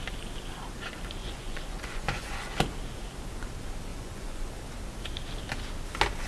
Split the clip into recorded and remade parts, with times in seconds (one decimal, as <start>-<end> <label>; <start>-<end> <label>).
0.0-1.2 recorded; 1.2-2.5 remade; 2.5-3.9 recorded; 3.9-4.5 remade; 4.5-6.3 recorded